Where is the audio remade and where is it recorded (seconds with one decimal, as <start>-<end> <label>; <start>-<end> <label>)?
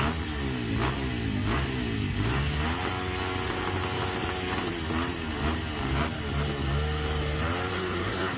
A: 0.0-7.7 recorded; 7.7-8.4 remade